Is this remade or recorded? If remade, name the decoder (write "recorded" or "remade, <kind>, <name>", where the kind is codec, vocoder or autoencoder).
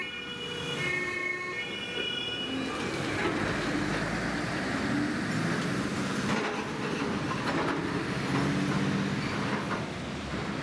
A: recorded